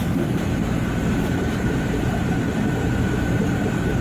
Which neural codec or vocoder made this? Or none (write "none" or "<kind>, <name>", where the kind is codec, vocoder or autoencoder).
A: vocoder, BigVGAN v2